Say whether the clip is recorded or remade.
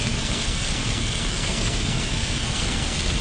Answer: remade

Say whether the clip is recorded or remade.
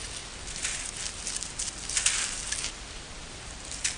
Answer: recorded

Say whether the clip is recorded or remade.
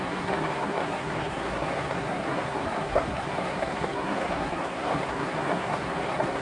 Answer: remade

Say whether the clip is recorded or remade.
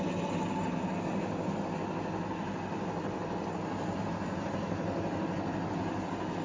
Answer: recorded